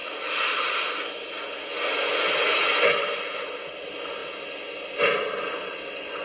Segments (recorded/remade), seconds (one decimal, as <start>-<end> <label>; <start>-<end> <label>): 0.0-0.9 remade; 0.9-6.2 recorded